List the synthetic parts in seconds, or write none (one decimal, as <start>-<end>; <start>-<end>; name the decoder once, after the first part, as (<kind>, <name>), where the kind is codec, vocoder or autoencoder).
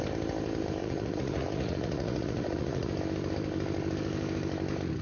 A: 0.8-2.9 (vocoder, Vocos)